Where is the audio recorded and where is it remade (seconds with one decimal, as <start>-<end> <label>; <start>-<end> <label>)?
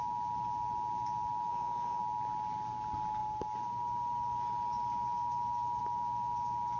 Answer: 0.0-1.5 recorded; 1.5-2.0 remade; 2.0-6.8 recorded